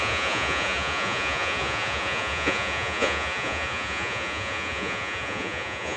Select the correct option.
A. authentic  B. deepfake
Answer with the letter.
B